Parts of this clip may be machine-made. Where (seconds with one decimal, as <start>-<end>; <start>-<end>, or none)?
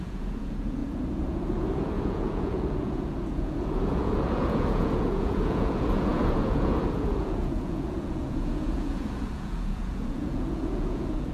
0.0-11.3